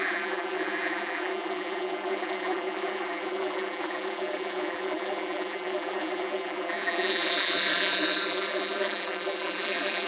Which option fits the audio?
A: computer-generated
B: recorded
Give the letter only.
A